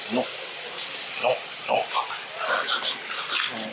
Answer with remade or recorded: recorded